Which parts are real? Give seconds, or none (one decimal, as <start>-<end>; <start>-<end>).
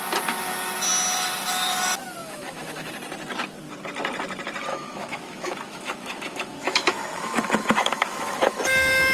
0.0-2.2; 2.9-4.7; 8.6-9.1